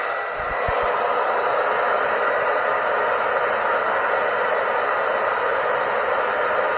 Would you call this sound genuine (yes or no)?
yes